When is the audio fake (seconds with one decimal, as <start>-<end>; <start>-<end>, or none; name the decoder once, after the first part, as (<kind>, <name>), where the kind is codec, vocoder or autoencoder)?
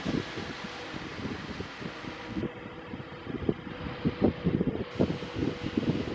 none